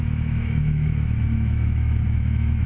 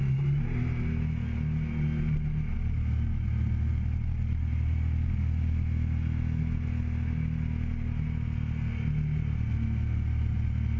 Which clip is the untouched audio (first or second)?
second